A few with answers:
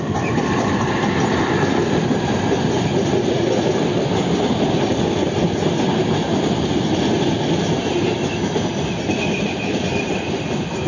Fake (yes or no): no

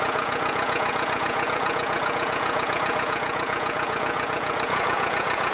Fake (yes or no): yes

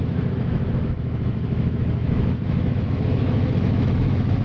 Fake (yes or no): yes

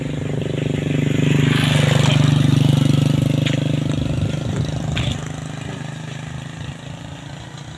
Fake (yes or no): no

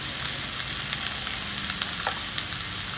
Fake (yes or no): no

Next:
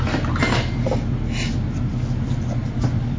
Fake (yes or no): no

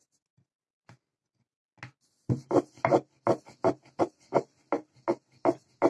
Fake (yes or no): no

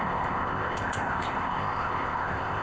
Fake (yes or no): yes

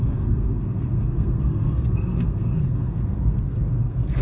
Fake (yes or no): yes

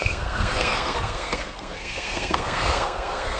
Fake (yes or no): yes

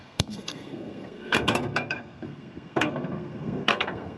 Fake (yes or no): yes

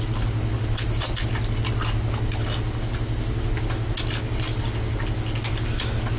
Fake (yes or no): no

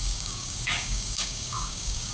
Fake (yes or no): yes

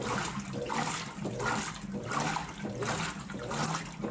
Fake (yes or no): no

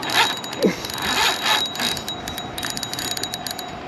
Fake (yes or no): no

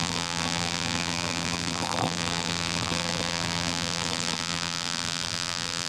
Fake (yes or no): yes